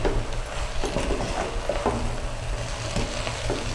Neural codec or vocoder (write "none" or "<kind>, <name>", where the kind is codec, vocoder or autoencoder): none